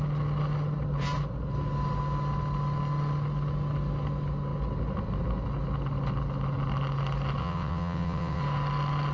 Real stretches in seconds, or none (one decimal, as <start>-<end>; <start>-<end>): 0.0-7.4; 8.4-9.1